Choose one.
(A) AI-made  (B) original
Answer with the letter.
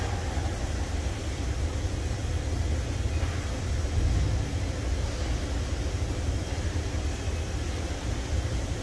B